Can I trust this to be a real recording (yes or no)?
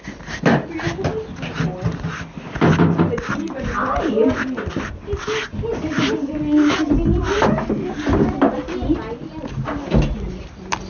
yes